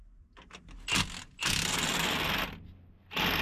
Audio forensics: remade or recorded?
recorded